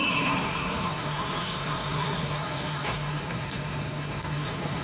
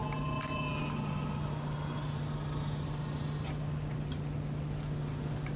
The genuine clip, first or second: second